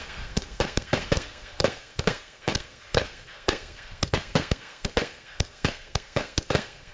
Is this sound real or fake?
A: fake